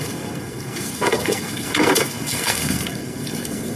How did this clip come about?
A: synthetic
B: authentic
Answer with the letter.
A